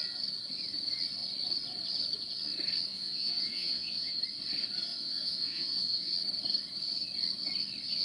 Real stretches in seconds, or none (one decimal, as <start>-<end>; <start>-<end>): 0.0-2.9; 4.2-4.9; 6.1-8.0